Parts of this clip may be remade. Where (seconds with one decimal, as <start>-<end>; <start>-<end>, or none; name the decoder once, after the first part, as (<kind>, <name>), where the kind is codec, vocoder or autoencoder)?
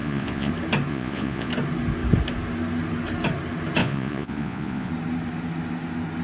0.0-0.5 (vocoder, Vocos); 0.9-1.5; 3.8-4.9